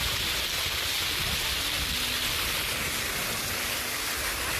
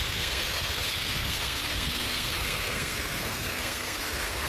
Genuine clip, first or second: first